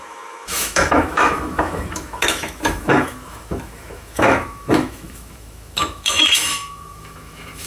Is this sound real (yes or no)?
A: no